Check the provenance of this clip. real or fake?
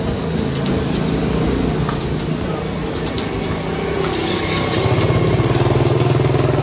real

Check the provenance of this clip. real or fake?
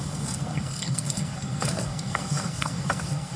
fake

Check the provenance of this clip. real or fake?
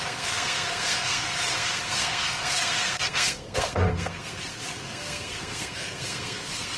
fake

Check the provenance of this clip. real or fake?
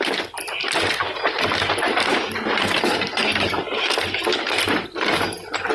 real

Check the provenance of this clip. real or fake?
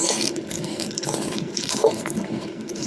fake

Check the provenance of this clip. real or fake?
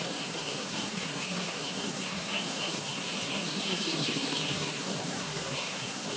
fake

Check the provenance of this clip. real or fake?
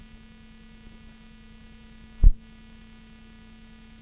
real